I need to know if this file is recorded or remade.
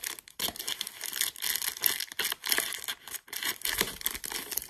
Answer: recorded